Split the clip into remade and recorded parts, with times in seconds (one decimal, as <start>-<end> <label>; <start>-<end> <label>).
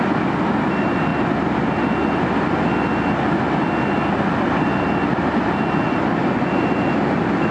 0.0-7.5 recorded